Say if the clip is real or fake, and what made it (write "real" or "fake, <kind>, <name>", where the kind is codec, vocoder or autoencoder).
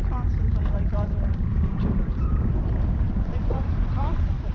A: fake, vocoder, BigVGAN v2